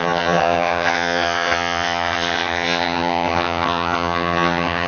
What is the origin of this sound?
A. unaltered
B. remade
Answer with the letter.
B